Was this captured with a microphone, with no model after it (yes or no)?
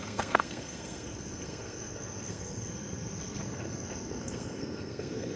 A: no